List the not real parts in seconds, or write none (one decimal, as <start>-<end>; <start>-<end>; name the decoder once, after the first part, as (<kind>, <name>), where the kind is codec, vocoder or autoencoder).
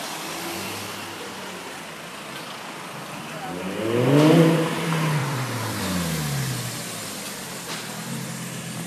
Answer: 5.2-5.8 (vocoder, BigVGAN v2)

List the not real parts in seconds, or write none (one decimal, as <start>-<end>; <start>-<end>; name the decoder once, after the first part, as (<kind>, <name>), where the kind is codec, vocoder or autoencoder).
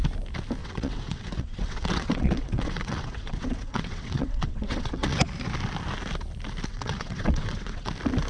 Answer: 0.6-5.3 (vocoder, WaveNeXt); 6.7-7.9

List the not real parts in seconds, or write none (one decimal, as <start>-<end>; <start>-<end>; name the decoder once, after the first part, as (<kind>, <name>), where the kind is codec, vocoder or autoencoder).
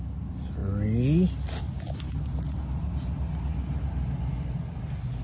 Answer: none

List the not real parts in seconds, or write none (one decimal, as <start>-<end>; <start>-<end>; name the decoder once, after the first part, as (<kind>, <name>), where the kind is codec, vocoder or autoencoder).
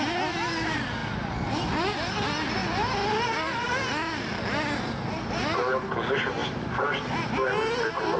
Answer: none